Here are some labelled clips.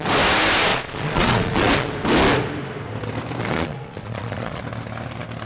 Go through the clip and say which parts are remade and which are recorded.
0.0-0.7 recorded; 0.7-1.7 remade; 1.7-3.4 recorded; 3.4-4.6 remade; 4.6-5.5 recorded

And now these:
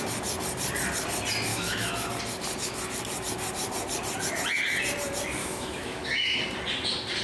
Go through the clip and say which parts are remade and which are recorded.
0.0-1.5 recorded; 1.5-2.1 remade; 2.1-5.4 recorded; 5.4-6.4 remade; 6.4-7.2 recorded

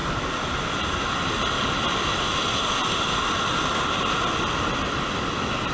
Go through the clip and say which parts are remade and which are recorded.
0.0-5.7 recorded

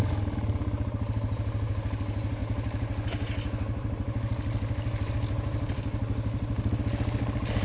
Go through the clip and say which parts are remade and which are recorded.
0.0-7.6 recorded